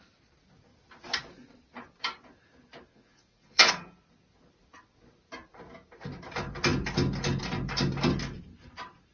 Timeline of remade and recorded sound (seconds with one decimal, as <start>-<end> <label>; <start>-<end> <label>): 0.0-2.9 recorded; 2.9-3.7 remade; 3.7-9.1 recorded